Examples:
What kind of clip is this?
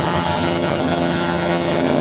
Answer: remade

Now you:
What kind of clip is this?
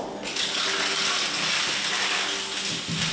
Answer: recorded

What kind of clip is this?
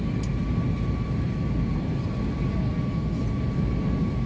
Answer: recorded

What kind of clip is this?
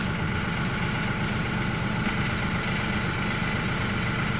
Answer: recorded